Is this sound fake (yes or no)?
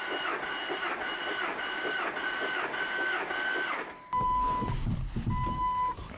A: no